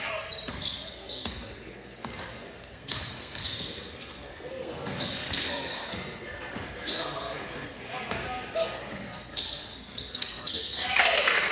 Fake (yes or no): yes